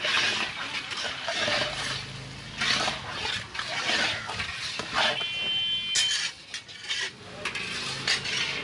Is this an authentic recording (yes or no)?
yes